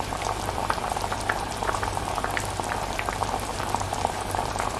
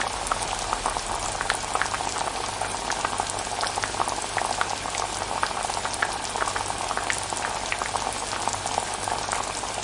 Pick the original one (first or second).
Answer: second